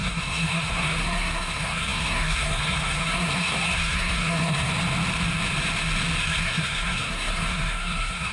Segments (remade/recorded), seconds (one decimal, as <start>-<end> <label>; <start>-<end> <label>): 0.0-4.7 remade; 4.7-6.2 recorded; 6.2-8.3 remade

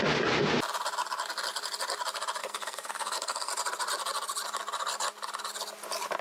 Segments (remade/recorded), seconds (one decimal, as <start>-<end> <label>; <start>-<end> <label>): 0.0-2.4 recorded; 2.4-3.5 remade; 3.5-6.2 recorded

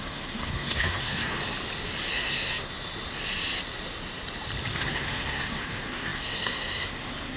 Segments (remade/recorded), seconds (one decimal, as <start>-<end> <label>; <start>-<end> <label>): 0.0-1.4 remade; 1.4-2.1 recorded; 2.1-2.7 remade; 2.7-4.7 recorded; 4.7-7.4 remade

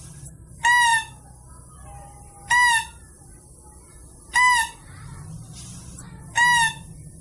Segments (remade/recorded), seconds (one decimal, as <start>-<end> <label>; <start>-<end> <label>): 0.0-7.2 recorded

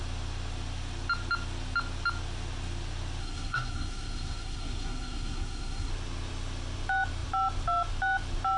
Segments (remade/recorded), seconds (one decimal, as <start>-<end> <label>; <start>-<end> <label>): 0.0-3.2 recorded; 3.2-5.9 remade; 5.9-8.6 recorded

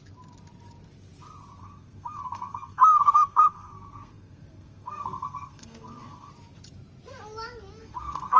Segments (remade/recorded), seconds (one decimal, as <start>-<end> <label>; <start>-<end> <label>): 0.0-1.6 recorded; 1.6-6.3 remade; 6.3-7.8 recorded; 7.8-8.4 remade

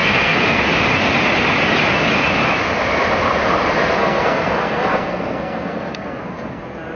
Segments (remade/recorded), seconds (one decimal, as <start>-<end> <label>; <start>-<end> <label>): 0.0-0.6 remade; 0.6-4.0 recorded; 4.0-6.6 remade; 6.6-7.0 recorded